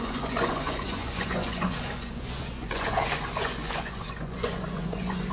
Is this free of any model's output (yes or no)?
no